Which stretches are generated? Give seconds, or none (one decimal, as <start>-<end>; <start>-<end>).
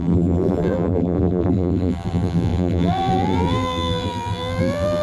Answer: 0.0-5.0